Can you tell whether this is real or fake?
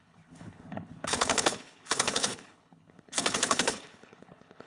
fake